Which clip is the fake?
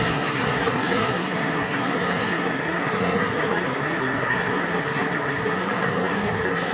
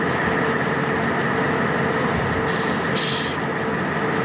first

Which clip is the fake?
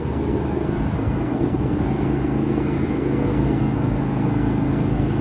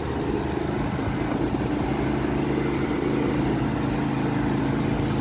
first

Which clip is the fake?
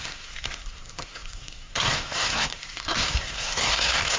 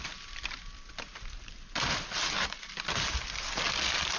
first